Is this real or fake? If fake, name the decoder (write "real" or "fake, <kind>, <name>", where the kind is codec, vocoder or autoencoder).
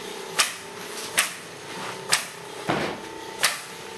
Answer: real